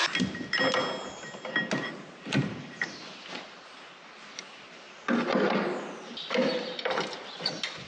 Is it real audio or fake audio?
real